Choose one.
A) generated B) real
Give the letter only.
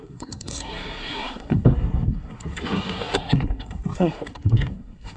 A